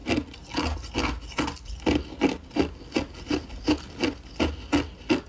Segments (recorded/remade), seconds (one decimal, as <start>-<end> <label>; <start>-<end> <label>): 0.0-5.3 recorded